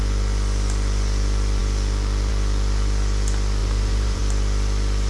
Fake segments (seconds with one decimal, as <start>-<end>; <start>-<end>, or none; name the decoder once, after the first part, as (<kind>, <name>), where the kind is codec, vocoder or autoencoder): 3.6-4.2 (vocoder, BigVGAN v2)

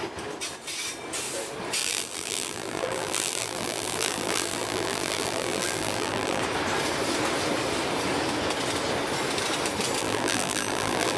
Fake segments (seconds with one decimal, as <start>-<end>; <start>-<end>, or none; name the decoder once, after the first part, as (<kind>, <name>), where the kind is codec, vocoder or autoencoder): 1.8-6.4 (vocoder, BigVGAN v2); 10.0-11.2

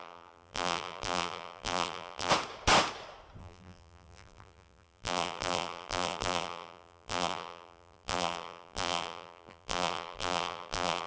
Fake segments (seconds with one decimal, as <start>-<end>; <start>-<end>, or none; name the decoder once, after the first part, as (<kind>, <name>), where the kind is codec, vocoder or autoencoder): 0.0-2.3 (vocoder, BigVGAN v2); 3.4-11.1

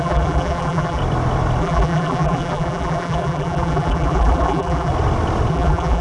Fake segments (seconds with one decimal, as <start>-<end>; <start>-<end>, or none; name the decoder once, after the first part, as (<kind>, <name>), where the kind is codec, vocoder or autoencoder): 0.0-1.0 (vocoder, BigVGAN v2); 1.6-4.9; 5.5-6.0

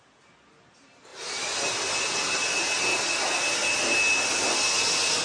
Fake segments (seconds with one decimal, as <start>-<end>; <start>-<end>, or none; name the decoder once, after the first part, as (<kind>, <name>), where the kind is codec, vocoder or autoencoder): 1.1-1.7 (vocoder, BigVGAN v2)